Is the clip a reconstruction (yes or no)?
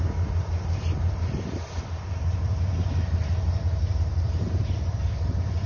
yes